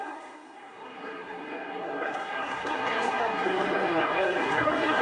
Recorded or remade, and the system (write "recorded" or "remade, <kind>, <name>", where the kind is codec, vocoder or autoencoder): remade, codec, SNAC